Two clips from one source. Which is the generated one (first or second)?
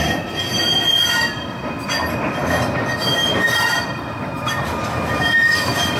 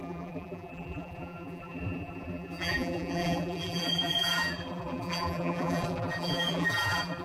second